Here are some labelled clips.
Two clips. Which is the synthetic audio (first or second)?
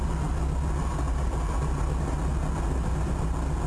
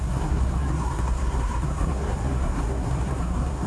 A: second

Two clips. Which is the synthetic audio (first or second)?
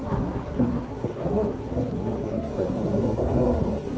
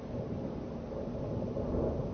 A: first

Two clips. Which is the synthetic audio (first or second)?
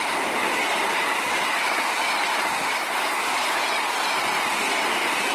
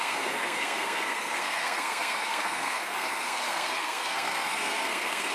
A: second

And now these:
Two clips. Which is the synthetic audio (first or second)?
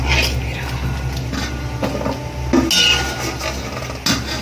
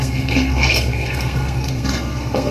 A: second